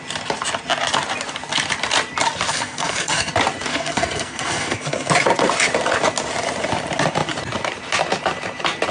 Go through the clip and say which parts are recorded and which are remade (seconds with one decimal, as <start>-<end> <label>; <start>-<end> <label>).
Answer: 0.0-2.5 recorded; 2.5-3.3 remade; 3.3-3.7 recorded; 3.7-5.1 remade; 5.1-8.9 recorded